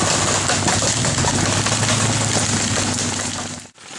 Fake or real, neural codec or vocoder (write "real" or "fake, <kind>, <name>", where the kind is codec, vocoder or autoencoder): real